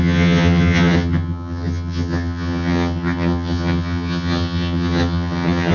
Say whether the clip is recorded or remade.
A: remade